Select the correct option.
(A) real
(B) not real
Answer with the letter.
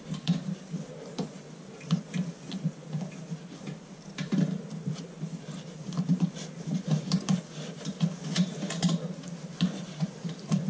B